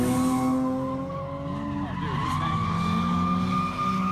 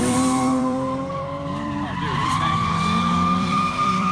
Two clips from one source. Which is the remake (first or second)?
second